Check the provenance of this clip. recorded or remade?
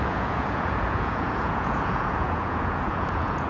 remade